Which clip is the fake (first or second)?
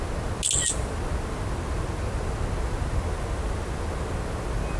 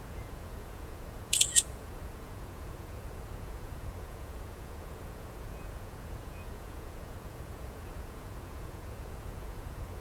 second